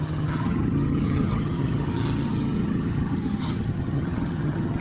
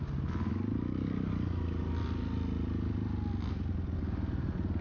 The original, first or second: second